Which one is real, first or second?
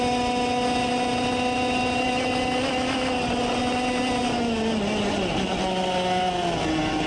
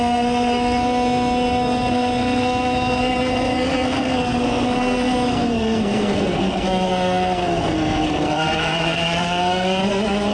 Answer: first